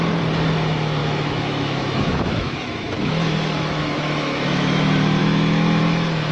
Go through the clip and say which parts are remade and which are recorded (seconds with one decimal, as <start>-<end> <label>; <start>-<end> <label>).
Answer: 0.0-1.0 recorded; 1.0-4.8 remade; 4.8-5.2 recorded; 5.2-5.8 remade; 5.8-6.3 recorded